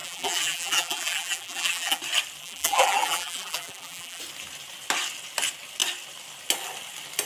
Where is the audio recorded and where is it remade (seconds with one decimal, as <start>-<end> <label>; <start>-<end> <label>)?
0.0-2.0 remade; 2.0-2.4 recorded; 2.4-4.2 remade; 4.2-7.3 recorded